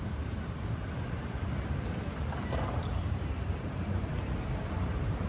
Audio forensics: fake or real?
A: fake